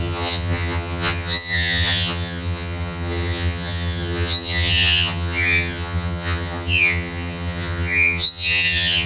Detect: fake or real fake